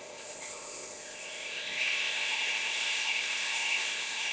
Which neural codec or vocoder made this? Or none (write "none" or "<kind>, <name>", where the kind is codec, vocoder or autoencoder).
codec, ZipCodec